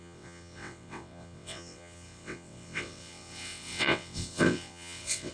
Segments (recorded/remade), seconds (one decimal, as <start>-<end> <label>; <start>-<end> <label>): 0.0-5.3 remade